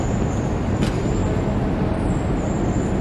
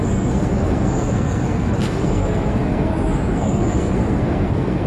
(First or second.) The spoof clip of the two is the second